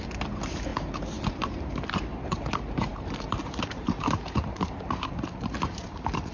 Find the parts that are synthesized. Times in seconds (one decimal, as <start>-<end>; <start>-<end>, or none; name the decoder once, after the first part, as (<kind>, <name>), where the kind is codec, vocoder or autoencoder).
0.0-0.7 (vocoder, BigVGAN v2); 1.3-6.3